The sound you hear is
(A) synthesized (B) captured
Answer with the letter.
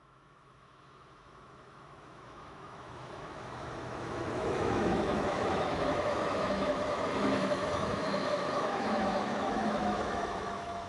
A